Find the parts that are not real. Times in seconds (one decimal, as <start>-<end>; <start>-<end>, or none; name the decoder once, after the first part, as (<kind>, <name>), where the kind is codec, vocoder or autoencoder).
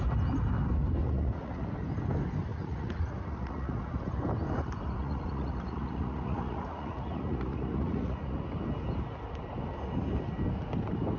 1.0-1.7 (vocoder, Vocos); 2.5-4.0; 5.0-8.4